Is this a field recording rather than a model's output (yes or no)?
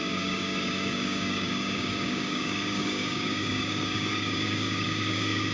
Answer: no